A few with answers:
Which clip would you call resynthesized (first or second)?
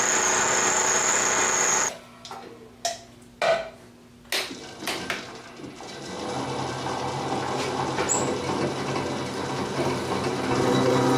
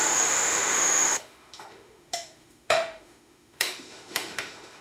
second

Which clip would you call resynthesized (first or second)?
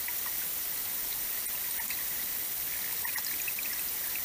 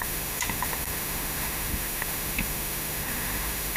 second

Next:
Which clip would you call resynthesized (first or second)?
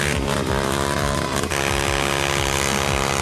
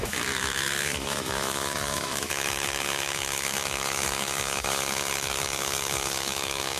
second